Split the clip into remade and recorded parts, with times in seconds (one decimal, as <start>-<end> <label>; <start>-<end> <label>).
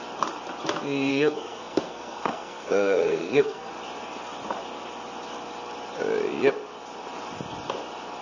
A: 0.0-1.1 recorded; 1.1-3.7 remade; 3.7-8.2 recorded